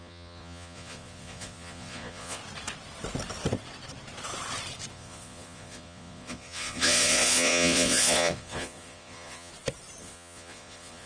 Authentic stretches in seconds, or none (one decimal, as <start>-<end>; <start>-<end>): 2.4-4.9; 9.5-10.0

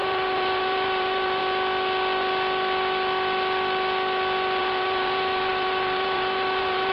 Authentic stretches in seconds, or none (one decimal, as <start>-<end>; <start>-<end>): 1.4-4.6